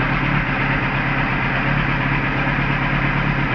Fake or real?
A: real